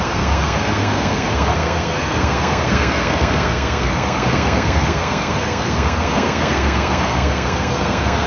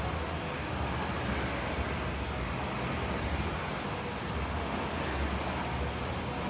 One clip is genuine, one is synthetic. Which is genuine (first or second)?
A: second